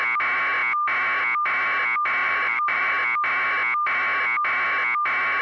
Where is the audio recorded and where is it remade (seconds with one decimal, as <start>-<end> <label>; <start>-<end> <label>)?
0.0-2.2 recorded; 2.2-2.9 remade; 2.9-5.4 recorded